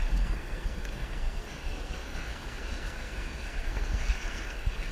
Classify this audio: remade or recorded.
remade